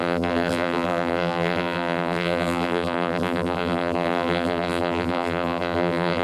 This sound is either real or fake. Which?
fake